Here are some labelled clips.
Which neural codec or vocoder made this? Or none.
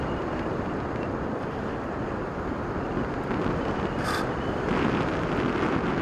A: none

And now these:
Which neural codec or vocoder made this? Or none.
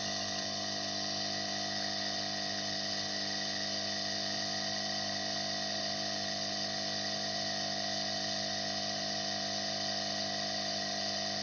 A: none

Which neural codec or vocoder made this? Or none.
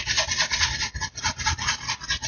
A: none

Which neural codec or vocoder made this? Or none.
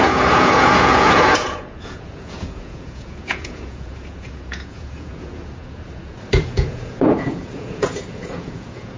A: vocoder, Vocos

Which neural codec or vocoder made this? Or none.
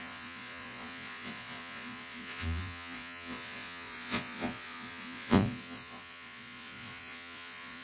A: vocoder, Vocos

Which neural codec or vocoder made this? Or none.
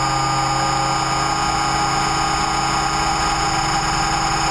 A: none